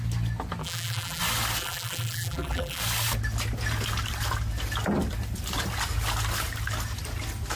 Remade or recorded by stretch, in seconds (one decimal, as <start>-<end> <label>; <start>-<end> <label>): 0.0-0.6 recorded; 0.6-1.2 remade; 1.2-1.6 recorded; 1.6-2.8 remade; 2.8-7.6 recorded